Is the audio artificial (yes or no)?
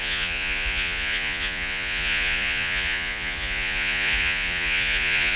yes